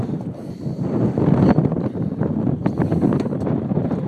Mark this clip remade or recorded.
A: recorded